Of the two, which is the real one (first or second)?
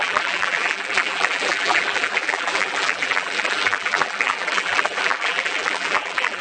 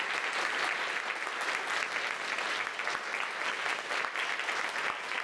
second